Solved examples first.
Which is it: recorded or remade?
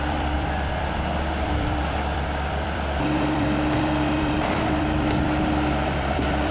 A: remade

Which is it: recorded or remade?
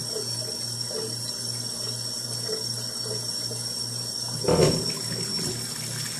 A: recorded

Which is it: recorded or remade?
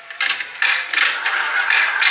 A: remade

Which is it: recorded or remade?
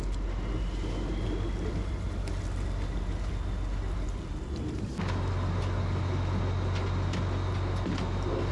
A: recorded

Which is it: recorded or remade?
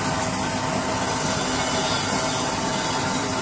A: recorded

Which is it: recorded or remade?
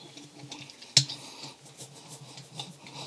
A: recorded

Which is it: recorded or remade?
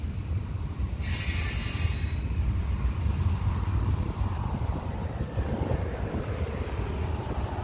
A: recorded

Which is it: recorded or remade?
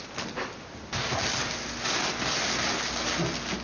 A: recorded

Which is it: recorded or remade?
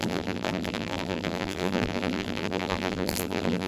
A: remade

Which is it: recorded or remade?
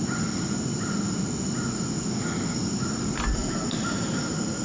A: recorded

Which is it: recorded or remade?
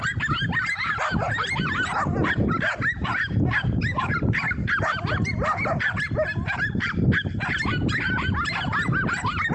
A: remade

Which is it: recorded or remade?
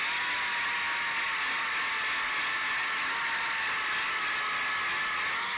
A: recorded